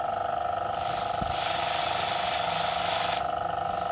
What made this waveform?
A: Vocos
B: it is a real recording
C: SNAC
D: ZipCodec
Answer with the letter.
B